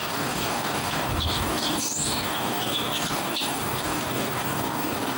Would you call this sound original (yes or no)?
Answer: no